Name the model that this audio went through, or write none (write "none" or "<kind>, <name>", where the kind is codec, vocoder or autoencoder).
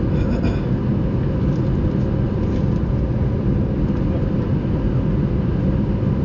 none